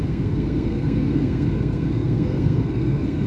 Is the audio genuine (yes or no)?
no